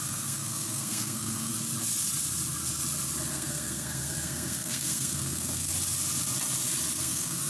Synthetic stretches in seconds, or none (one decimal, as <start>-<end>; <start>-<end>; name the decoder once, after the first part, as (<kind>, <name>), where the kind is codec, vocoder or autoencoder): 0.0-1.5 (codec, SNAC); 3.3-5.7; 7.0-7.5